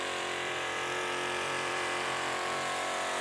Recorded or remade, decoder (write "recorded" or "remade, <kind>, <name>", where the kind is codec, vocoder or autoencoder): remade, vocoder, BigVGAN v2